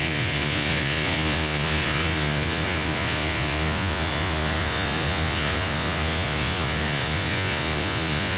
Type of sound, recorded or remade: remade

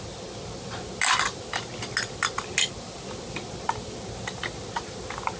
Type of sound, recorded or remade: recorded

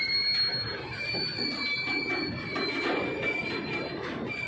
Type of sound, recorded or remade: recorded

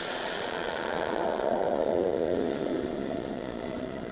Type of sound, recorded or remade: remade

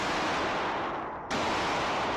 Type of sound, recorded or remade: recorded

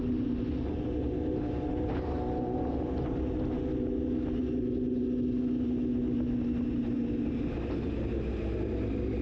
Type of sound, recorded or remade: recorded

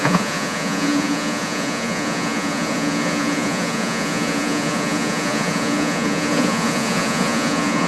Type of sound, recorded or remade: remade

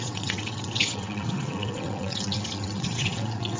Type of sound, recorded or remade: remade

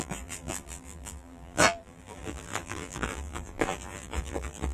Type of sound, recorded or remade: remade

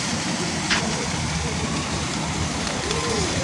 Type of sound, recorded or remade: remade